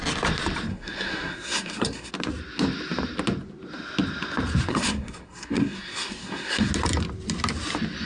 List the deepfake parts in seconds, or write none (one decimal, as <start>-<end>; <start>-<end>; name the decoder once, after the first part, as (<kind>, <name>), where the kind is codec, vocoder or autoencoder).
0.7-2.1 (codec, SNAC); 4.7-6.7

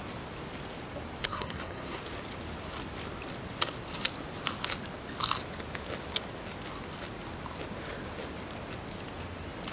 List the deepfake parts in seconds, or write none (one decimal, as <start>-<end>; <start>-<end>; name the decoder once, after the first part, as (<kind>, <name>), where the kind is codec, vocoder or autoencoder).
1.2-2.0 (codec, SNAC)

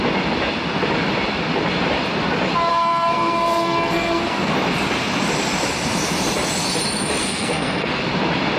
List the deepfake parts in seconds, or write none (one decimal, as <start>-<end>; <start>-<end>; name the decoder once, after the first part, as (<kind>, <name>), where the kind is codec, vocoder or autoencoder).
2.7-4.5 (codec, SNAC); 7.2-8.0

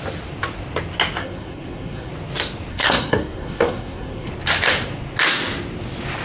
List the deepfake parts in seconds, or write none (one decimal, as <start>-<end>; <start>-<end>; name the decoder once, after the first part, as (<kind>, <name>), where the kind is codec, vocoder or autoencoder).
1.2-2.1 (codec, SNAC); 2.7-4.3

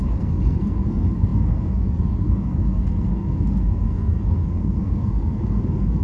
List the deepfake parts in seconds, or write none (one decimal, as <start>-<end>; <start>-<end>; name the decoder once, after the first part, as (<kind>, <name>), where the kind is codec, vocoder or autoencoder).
0.0-6.0 (codec, SNAC)

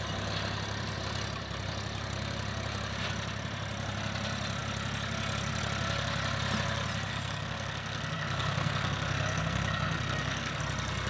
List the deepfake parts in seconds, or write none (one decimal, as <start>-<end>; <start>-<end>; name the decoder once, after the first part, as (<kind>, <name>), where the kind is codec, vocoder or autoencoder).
7.1-10.6 (codec, SNAC)

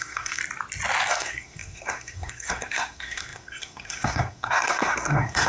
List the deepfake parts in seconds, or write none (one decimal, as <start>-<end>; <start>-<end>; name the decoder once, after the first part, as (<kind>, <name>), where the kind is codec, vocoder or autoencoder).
0.0-0.4 (codec, SNAC); 1.1-5.5

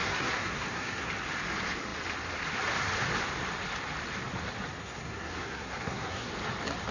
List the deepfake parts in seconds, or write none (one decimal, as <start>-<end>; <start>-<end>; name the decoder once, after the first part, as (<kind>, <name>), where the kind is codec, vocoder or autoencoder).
0.0-1.1 (codec, SNAC); 4.8-6.3